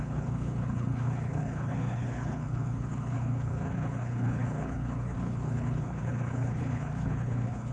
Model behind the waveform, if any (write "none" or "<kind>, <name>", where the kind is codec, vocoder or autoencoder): codec, HILCodec